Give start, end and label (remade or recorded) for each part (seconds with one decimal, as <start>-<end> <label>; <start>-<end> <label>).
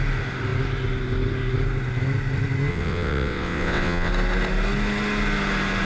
0.0-2.7 recorded; 2.7-4.1 remade; 4.1-5.8 recorded